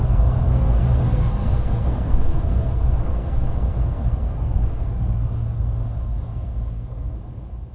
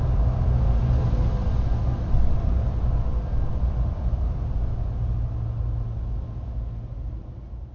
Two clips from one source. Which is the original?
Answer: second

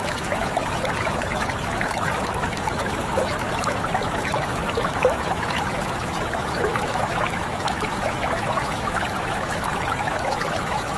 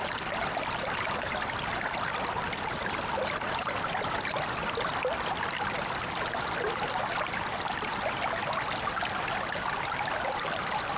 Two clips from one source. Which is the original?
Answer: second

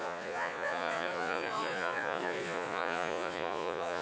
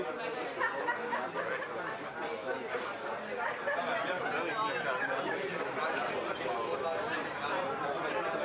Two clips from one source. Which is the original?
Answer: second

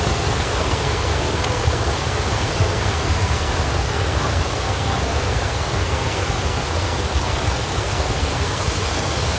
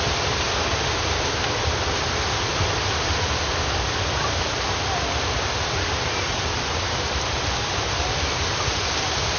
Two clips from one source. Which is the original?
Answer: second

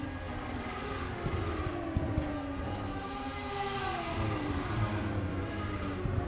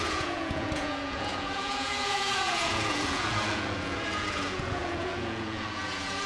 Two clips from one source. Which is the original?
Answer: first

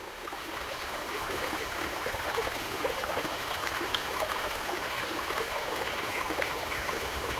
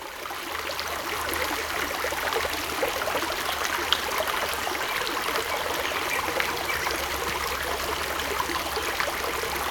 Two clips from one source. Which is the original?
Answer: second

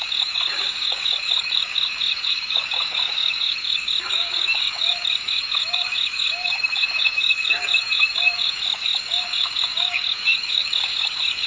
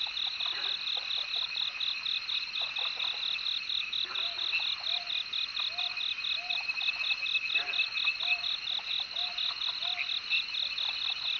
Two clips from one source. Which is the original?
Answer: second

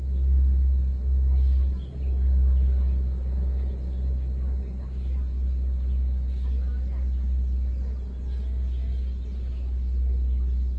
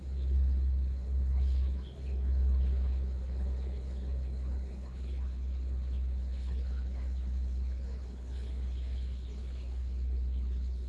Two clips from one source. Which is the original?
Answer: first